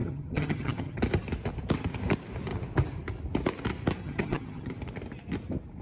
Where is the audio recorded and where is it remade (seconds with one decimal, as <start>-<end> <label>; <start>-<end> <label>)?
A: 0.0-1.0 remade; 1.0-4.0 recorded; 4.0-4.7 remade; 4.7-5.8 recorded